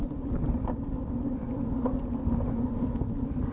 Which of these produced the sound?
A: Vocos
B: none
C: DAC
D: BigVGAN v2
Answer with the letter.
B